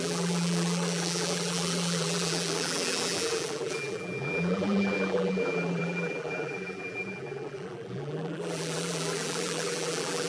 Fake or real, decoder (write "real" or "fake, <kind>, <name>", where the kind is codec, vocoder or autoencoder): fake, vocoder, BigVGAN v2